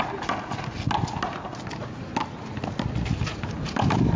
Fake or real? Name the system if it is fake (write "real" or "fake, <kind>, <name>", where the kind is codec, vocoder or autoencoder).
real